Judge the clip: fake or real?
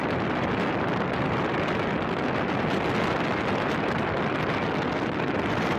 real